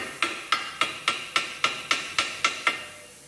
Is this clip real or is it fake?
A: real